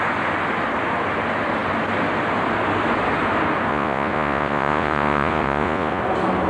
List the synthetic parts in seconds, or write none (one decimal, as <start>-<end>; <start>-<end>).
3.7-6.0